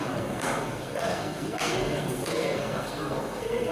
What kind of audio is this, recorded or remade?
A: remade